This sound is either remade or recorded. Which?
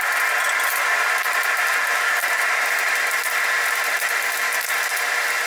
recorded